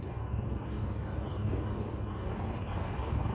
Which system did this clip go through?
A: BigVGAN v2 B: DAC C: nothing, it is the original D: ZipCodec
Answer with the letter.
B